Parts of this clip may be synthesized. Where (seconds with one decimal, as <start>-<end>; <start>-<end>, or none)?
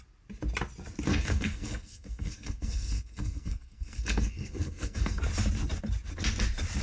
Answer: 1.1-5.2